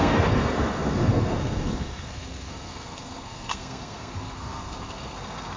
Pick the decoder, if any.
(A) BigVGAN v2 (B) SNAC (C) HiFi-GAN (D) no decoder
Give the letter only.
B